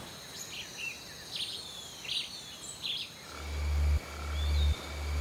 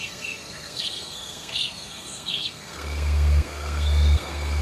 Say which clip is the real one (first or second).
first